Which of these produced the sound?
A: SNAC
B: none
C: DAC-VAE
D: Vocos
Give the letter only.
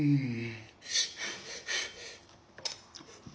B